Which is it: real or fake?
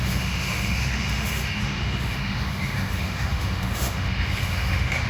fake